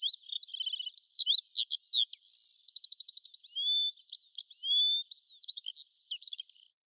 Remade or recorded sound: recorded